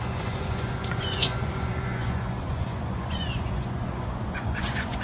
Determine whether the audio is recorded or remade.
remade